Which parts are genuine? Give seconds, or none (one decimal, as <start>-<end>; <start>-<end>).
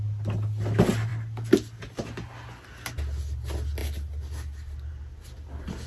0.0-5.9